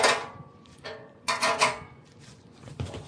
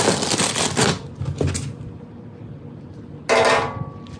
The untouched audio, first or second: second